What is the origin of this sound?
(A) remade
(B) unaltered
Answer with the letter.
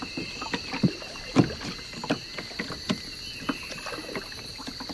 B